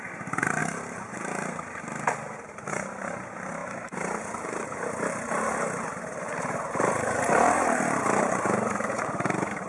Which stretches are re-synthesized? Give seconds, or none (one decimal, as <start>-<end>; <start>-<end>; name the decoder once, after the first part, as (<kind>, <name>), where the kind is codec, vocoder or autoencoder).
0.0-9.7 (vocoder, BigVGAN v2)